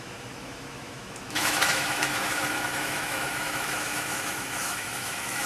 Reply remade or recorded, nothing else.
remade